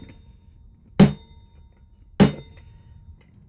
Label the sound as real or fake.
real